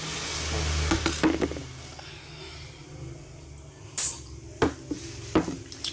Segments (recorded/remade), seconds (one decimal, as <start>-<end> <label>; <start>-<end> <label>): 0.0-5.9 recorded